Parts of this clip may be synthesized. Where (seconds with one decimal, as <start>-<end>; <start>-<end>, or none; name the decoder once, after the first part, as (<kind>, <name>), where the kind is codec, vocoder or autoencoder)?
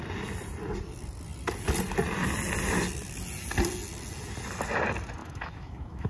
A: 5.2-6.1 (autoencoder, DAC-VAE)